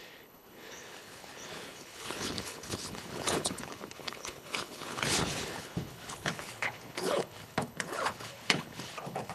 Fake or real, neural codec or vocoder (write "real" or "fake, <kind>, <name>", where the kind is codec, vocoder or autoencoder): fake, codec, HILCodec